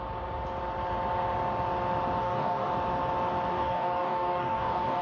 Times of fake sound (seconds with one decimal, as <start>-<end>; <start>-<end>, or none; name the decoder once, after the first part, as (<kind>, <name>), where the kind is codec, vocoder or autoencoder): 2.2-2.7 (codec, DAC); 3.5-5.0